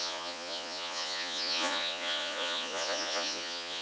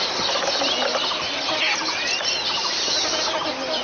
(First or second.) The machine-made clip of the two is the first